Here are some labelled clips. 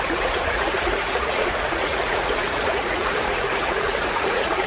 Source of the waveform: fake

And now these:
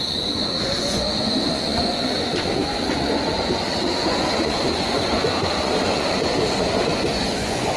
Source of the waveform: fake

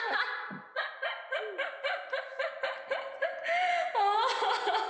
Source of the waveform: real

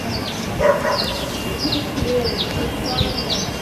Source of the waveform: real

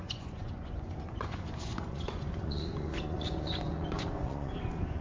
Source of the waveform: fake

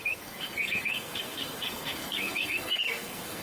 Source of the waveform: fake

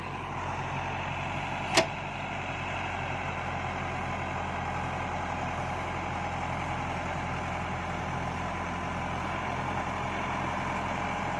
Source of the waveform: real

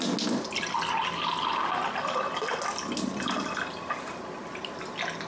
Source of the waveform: real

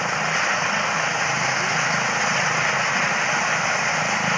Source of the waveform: real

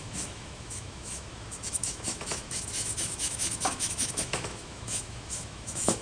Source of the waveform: fake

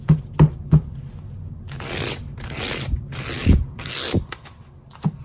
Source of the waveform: real